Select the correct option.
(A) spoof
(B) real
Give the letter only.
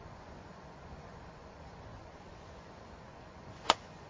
A